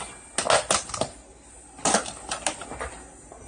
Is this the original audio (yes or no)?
yes